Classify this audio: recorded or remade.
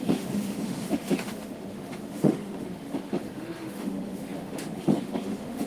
remade